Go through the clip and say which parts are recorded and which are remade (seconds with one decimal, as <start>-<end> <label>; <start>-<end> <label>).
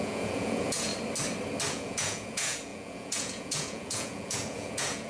0.0-0.9 remade; 0.9-1.7 recorded; 1.7-5.1 remade